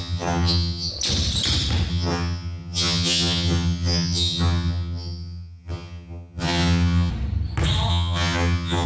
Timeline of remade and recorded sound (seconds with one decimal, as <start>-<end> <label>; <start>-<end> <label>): 0.0-0.9 remade; 0.9-1.9 recorded; 1.9-7.1 remade; 7.1-7.9 recorded; 7.9-8.9 remade